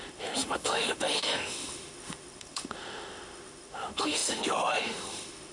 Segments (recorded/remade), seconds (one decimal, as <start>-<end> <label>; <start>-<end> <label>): 0.0-5.5 remade